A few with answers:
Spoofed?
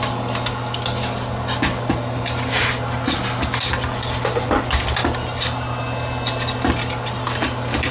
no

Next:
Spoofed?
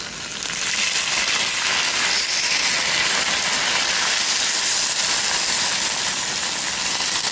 no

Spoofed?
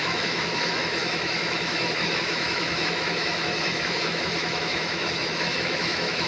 yes